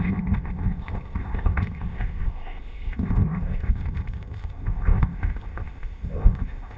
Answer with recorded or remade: remade